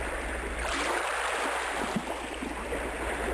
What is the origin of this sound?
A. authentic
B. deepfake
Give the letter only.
A